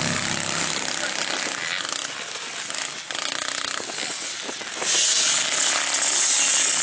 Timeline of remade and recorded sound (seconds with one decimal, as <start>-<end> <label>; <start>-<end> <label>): 0.0-6.8 recorded